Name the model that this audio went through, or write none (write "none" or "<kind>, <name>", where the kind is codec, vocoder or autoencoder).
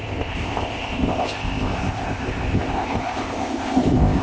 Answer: codec, ZipCodec